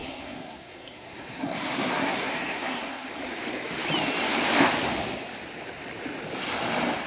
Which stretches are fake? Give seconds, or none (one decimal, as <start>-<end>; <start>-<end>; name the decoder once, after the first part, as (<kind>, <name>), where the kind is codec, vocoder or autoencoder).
0.0-3.1 (codec, SNAC)